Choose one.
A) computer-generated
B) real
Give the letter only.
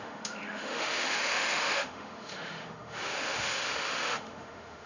A